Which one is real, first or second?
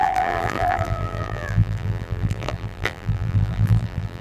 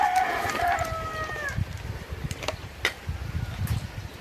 second